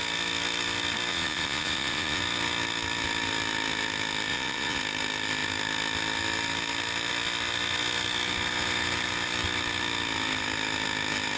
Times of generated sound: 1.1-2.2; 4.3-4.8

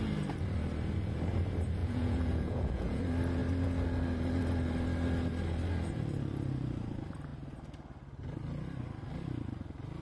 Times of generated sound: 1.8-3.0